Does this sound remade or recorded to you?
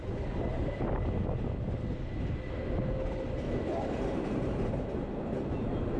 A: recorded